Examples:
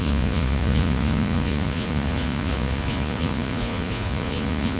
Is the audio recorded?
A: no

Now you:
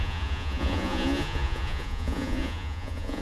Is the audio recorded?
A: no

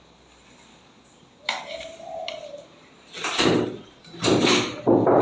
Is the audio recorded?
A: yes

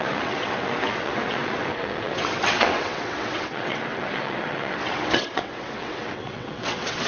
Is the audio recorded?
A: no